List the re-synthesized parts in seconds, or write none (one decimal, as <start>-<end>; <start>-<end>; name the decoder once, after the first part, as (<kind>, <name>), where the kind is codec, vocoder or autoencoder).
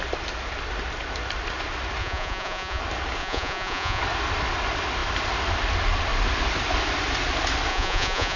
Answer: 2.0-2.8 (vocoder, Vocos); 3.2-4.0; 7.7-8.4